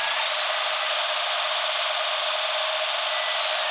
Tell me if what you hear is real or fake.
real